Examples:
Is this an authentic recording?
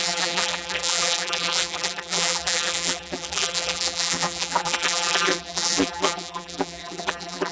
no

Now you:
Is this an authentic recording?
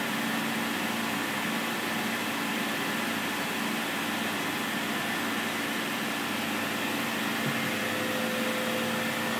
yes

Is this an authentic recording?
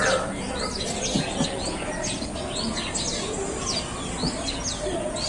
yes